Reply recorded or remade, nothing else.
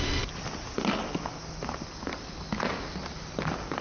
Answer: recorded